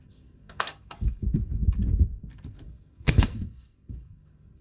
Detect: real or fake fake